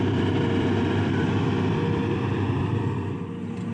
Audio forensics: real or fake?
fake